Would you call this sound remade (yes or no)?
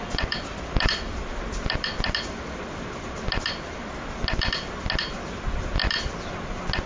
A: no